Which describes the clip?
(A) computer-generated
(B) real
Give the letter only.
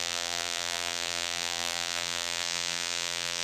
A